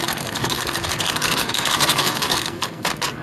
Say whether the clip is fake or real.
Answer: fake